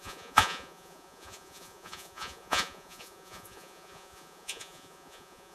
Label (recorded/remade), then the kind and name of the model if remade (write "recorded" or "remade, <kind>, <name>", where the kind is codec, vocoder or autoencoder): remade, vocoder, Vocos